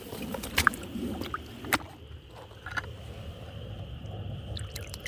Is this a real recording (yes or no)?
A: yes